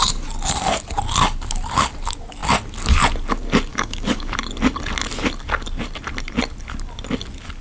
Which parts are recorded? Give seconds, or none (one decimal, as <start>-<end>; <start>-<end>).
0.0-3.7; 4.3-7.6